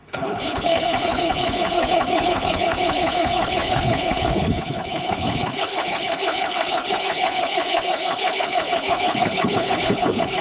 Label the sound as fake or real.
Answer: fake